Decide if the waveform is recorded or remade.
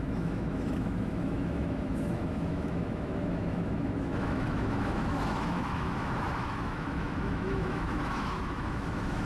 remade